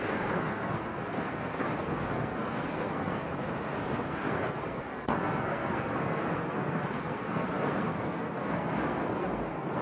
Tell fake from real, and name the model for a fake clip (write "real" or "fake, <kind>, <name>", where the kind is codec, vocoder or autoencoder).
fake, codec, SNAC